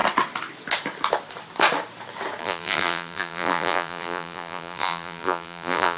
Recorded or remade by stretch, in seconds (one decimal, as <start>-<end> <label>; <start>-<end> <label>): 0.0-2.4 recorded; 2.4-6.0 remade